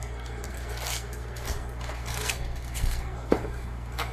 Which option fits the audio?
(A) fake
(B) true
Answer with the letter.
A